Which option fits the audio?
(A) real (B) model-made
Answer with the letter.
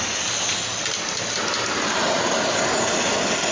A